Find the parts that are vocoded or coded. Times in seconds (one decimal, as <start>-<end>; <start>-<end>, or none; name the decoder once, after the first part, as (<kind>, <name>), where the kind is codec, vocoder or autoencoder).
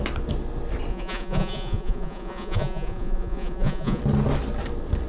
0.9-4.0 (vocoder, Vocos)